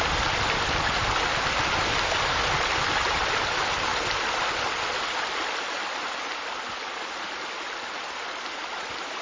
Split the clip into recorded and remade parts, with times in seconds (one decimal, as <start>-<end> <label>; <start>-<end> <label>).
0.0-9.2 recorded